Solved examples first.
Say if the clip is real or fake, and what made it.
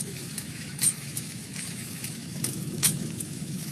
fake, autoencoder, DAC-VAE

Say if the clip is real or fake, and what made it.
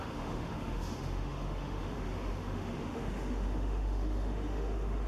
fake, autoencoder, DAC-VAE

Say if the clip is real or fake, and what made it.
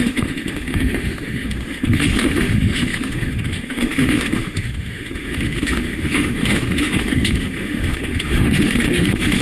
fake, autoencoder, DAC-VAE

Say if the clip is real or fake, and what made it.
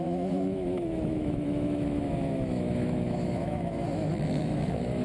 fake, autoencoder, DAC-VAE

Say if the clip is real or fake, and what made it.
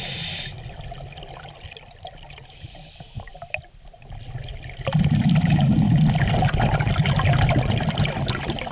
real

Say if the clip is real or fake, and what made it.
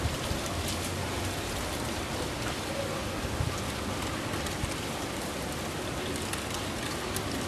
real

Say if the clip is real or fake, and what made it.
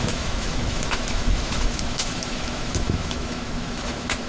fake, autoencoder, DAC-VAE